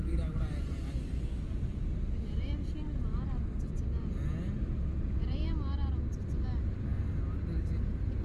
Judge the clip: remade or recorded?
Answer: recorded